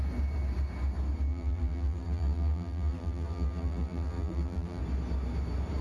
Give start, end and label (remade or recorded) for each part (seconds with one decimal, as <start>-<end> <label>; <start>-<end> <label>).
0.0-1.3 recorded; 1.3-4.8 remade; 4.8-5.8 recorded